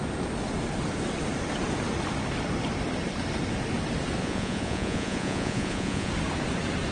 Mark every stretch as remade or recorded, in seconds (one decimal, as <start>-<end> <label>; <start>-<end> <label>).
0.0-4.2 recorded; 4.2-6.1 remade; 6.1-6.9 recorded